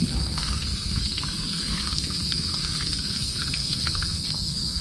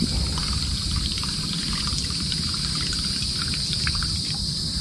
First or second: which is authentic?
second